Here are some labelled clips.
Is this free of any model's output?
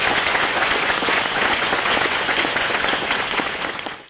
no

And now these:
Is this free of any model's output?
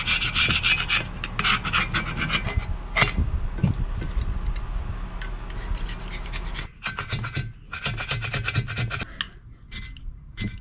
yes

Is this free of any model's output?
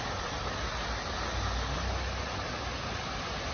yes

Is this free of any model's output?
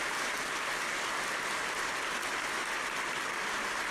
yes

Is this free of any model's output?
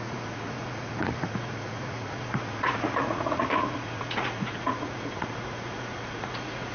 no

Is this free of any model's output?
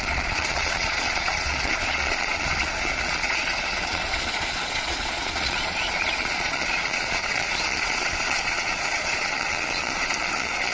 no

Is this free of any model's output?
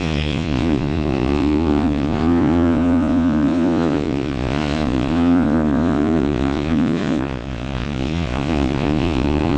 no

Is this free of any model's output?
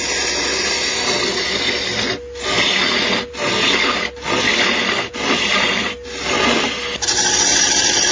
yes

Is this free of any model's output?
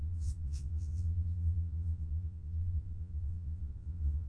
no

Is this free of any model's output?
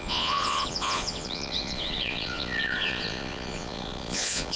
no